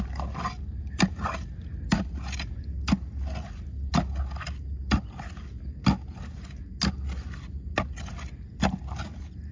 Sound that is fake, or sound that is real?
real